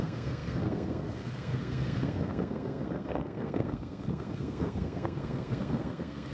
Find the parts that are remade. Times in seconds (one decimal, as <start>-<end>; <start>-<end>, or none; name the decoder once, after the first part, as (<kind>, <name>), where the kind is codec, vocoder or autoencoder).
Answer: 0.0-6.3 (codec, SNAC)